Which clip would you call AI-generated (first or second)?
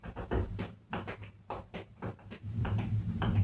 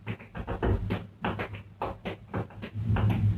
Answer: first